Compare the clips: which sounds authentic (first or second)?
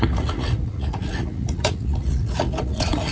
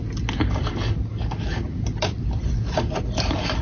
second